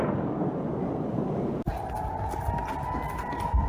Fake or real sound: real